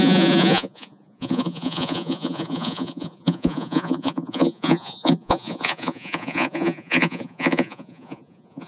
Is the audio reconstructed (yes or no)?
yes